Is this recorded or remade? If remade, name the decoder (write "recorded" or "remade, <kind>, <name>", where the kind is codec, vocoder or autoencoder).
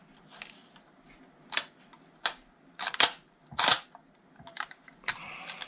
recorded